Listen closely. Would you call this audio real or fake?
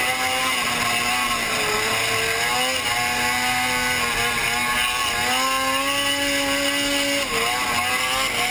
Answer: real